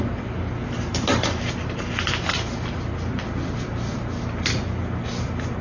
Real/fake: real